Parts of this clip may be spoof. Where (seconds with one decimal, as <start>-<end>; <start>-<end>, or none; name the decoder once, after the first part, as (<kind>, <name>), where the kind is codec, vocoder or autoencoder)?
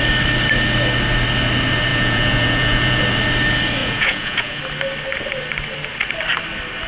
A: 1.9-3.0 (vocoder, Vocos); 3.8-4.6